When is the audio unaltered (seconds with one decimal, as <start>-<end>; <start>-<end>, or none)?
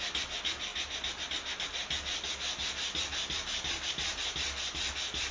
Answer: 0.0-5.3